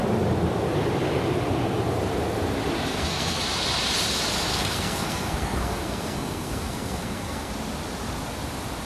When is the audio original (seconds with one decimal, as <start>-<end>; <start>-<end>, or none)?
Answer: 0.0-2.9; 3.4-4.5; 7.5-8.9